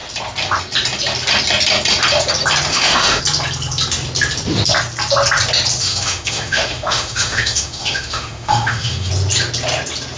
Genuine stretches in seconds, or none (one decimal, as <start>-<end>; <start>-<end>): 0.0-2.7; 3.2-5.8; 9.1-10.2